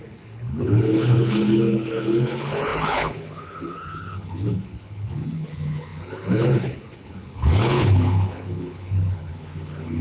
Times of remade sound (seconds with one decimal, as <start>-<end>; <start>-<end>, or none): 0.0-10.0